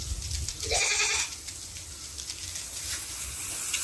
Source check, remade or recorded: recorded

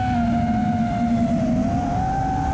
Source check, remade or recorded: recorded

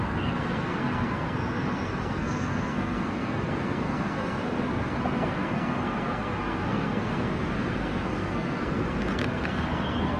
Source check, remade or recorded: remade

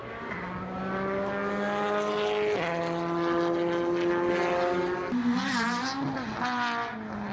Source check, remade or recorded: recorded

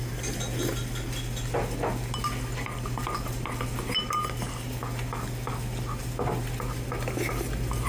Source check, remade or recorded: recorded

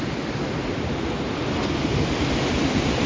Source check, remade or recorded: recorded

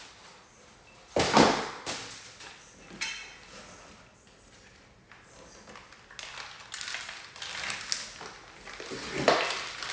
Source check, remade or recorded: recorded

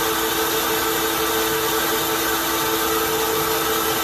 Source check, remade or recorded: recorded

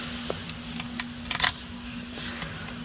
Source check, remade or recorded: recorded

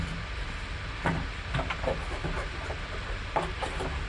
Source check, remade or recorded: recorded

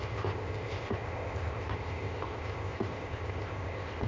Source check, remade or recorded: remade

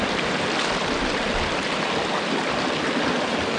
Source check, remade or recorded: recorded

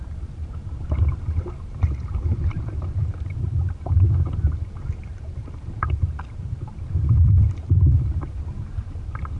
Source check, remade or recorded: remade